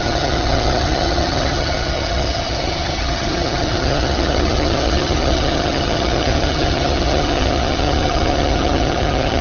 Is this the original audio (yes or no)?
no